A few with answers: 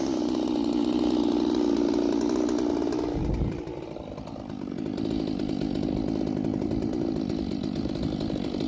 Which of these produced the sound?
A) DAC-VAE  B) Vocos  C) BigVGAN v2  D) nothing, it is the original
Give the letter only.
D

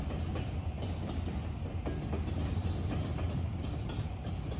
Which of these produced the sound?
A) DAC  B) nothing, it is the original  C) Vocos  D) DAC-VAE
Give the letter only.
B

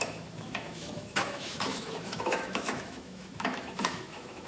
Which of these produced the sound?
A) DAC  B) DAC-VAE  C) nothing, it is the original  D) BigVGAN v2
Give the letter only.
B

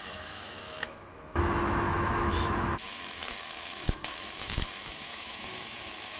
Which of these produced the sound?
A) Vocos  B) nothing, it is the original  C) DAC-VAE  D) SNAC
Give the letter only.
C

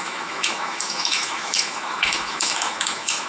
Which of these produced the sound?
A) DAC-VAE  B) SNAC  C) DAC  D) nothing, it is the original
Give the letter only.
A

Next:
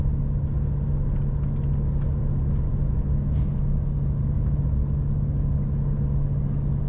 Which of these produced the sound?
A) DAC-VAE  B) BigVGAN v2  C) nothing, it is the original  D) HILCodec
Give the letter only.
C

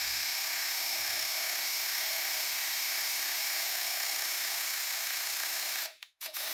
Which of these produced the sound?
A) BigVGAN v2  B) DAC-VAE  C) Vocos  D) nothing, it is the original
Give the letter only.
B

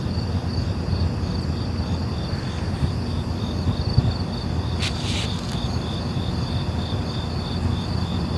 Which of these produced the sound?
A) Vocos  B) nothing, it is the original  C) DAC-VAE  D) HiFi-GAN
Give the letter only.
B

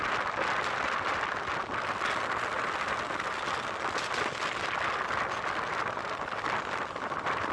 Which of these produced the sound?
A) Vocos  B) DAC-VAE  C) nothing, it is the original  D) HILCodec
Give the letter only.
C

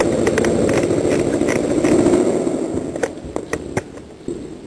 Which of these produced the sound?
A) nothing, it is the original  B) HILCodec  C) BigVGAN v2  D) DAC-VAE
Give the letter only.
A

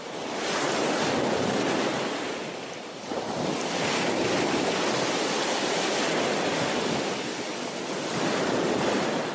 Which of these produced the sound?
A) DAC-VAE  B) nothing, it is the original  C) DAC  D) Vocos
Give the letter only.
B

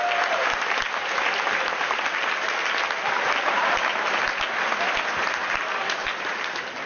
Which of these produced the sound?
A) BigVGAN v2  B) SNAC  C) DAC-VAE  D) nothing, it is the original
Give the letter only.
D